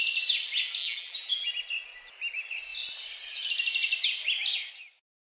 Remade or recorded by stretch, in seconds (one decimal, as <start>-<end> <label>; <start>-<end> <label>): 0.0-0.8 recorded; 0.8-1.5 remade; 1.5-5.3 recorded

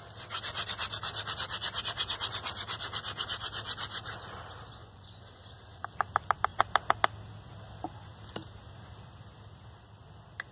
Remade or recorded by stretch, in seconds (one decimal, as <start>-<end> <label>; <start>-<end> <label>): 0.0-4.8 recorded; 4.8-5.4 remade; 5.4-10.5 recorded